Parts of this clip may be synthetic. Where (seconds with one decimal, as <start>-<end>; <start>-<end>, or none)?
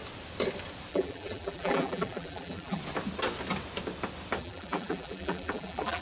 0.9-2.8; 4.4-6.0